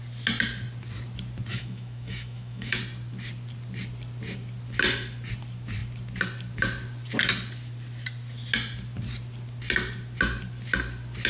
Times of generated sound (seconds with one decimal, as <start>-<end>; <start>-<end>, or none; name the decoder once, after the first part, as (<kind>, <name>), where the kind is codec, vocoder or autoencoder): 1.5-2.8 (autoencoder, DAC-VAE)